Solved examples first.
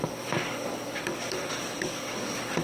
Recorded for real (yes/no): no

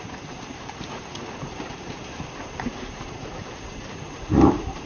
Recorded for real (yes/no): no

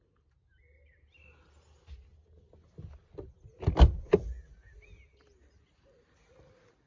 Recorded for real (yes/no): yes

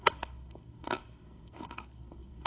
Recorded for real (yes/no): no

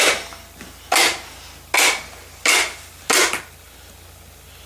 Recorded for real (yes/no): yes